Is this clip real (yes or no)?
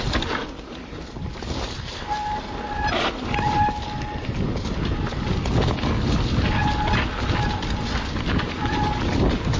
yes